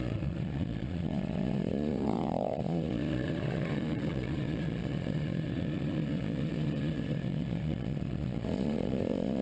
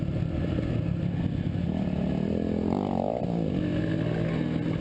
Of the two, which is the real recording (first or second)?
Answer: second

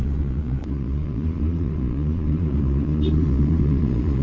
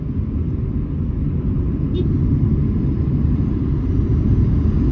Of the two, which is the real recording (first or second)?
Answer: second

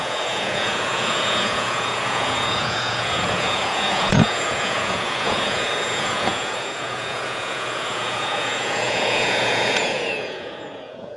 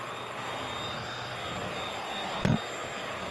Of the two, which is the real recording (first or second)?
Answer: second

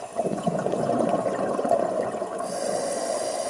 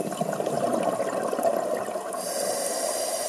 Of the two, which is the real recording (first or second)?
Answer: second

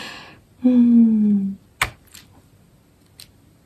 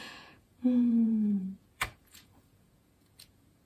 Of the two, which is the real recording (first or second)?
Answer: first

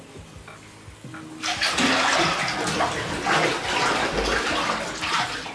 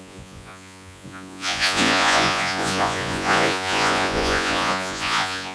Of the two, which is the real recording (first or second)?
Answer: first